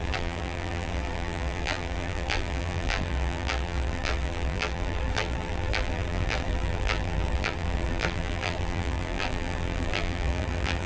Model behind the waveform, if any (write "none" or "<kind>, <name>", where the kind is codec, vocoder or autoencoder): vocoder, BigVGAN v2